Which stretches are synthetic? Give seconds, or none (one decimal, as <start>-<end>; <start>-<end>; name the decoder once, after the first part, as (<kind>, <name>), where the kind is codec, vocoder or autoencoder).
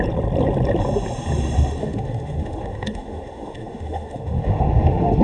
1.8-5.2 (autoencoder, DAC-VAE)